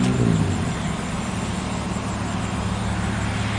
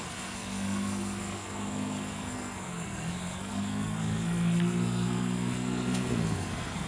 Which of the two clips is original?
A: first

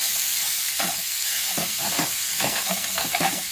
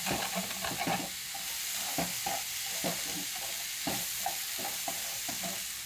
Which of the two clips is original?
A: second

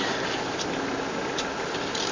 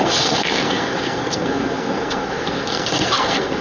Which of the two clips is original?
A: first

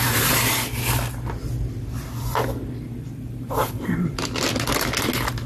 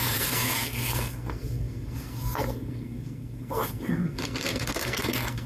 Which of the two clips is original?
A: first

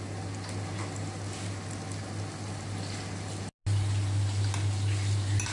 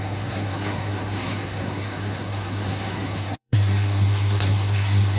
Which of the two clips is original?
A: first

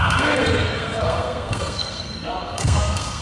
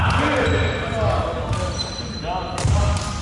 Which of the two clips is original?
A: second